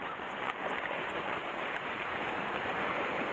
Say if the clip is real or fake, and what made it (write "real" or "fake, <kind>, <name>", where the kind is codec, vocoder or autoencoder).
fake, vocoder, Vocos